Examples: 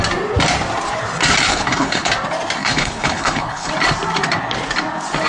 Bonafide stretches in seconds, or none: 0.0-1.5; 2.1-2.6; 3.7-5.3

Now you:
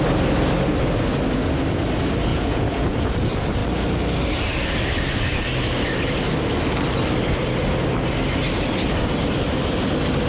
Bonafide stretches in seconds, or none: 0.0-2.3; 3.1-10.3

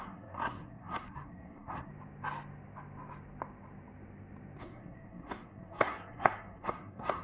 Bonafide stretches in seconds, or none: 1.9-4.6

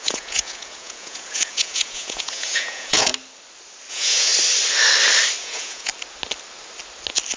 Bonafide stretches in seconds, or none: 3.1-3.9; 4.3-5.4; 5.9-7.4

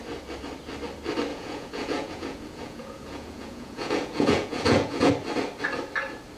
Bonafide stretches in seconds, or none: 0.0-1.3; 5.1-6.4

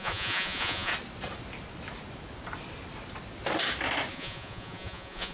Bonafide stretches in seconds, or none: 0.9-4.1